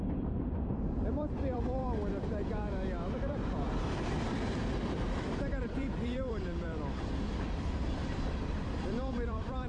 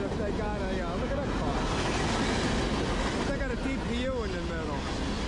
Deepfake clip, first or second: first